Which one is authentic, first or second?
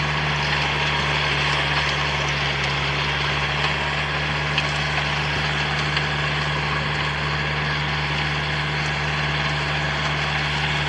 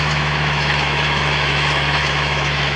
first